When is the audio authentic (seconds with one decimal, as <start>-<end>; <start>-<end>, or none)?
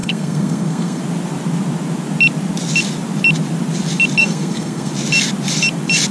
1.0-4.2; 4.9-6.1